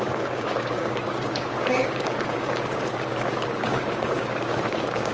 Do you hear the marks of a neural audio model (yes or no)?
yes